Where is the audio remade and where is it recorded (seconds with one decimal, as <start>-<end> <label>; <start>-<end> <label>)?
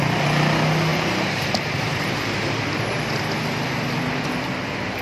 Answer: 0.0-0.9 recorded; 0.9-3.2 remade; 3.2-5.0 recorded